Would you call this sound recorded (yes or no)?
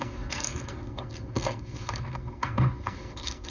no